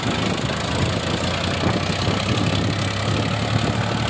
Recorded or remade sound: recorded